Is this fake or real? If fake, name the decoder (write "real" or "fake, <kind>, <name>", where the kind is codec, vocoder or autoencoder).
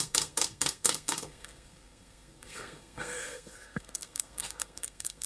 fake, codec, SNAC